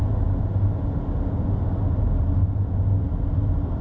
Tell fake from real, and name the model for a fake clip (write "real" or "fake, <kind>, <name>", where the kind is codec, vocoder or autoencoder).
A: real